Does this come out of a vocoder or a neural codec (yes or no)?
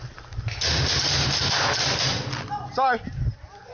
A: no